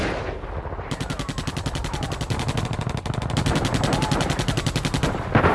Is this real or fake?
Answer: real